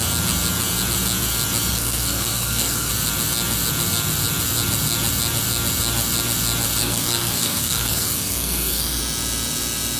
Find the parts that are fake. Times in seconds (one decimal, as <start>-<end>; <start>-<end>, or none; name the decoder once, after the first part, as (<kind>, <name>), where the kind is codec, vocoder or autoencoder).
1.7-2.9 (codec, SNAC); 6.8-9.0